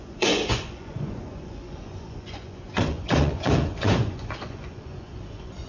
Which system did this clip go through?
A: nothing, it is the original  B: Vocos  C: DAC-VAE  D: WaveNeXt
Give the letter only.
B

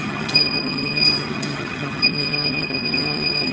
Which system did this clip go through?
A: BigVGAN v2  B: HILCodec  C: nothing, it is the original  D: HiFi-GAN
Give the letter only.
D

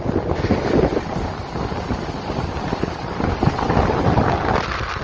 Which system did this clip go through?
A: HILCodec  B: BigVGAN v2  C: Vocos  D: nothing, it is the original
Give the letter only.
D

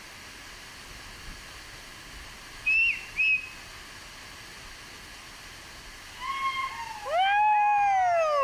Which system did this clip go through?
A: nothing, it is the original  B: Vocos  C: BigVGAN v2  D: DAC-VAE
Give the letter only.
A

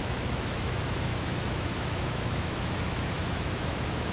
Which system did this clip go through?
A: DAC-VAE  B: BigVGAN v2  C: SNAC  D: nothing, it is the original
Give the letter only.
A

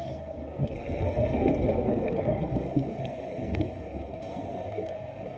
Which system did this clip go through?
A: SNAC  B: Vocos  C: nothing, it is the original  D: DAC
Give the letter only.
A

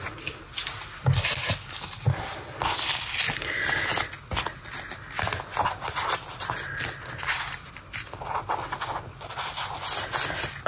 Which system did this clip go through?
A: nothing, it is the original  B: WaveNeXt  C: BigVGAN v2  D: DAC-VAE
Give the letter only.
A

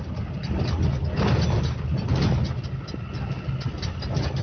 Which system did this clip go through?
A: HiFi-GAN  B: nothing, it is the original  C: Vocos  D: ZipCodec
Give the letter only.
B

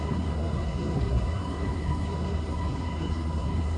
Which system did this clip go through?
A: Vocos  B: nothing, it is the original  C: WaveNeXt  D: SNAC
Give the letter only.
D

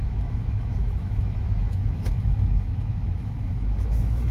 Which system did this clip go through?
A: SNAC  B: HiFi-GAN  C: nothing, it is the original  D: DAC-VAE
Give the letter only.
D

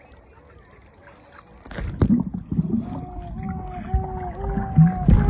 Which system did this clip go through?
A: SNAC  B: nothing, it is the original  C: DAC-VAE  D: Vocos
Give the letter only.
B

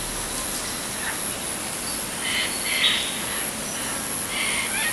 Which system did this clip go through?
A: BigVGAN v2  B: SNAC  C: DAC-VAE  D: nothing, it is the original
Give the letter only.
D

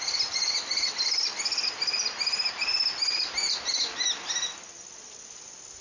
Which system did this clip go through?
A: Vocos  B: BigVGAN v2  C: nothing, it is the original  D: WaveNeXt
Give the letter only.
C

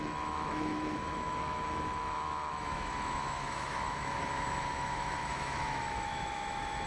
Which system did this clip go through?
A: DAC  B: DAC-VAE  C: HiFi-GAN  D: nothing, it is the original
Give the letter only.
B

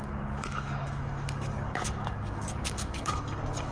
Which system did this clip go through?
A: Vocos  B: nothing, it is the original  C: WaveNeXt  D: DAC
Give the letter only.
D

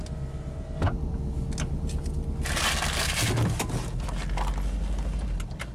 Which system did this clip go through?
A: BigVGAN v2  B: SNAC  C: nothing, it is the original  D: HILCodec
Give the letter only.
C